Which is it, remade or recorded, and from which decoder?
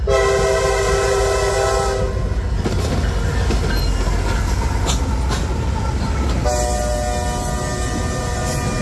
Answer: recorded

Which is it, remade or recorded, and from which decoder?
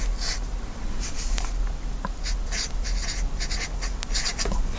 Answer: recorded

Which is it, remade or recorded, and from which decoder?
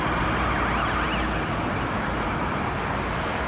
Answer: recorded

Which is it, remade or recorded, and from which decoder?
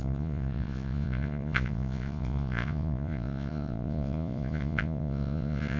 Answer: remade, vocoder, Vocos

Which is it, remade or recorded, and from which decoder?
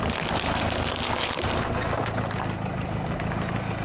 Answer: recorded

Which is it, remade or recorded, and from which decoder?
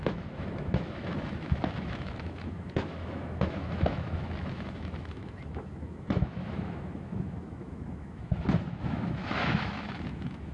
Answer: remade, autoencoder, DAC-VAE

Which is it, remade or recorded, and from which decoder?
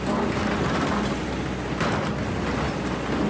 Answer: recorded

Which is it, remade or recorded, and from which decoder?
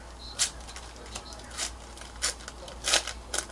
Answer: recorded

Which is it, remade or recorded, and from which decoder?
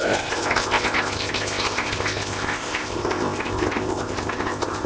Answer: remade, codec, ZipCodec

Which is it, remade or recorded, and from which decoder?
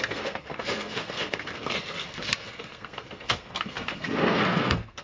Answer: remade, codec, SNAC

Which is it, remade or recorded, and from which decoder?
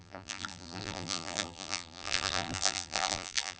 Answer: remade, vocoder, BigVGAN v2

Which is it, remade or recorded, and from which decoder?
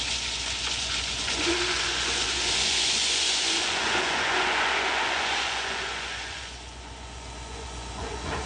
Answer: remade, vocoder, Vocos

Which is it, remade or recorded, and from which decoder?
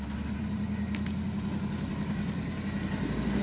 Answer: recorded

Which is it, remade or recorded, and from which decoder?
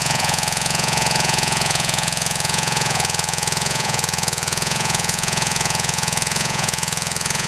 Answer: remade, vocoder, Vocos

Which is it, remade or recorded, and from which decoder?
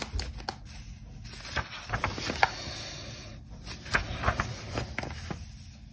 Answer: recorded